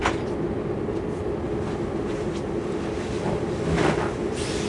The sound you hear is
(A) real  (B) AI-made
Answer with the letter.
A